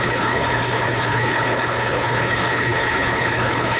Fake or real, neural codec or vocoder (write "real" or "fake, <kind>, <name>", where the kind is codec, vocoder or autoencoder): fake, codec, HILCodec